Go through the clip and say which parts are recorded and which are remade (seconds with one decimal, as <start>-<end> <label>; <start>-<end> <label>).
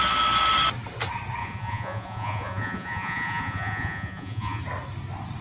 0.0-1.4 recorded; 1.4-4.6 remade; 4.6-5.4 recorded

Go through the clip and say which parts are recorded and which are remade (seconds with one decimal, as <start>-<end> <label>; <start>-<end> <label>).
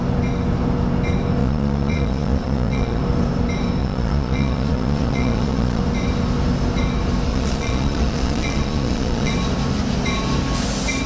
0.0-1.4 recorded; 1.4-3.0 remade; 3.0-3.8 recorded; 3.8-5.8 remade; 5.8-7.3 recorded; 7.3-9.3 remade; 9.3-11.1 recorded